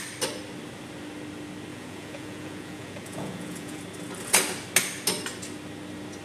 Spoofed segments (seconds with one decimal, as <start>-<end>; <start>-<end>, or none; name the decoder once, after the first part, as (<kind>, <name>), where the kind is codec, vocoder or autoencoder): 1.7-3.8 (vocoder, Vocos)